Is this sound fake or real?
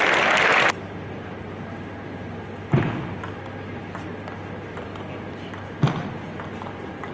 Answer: real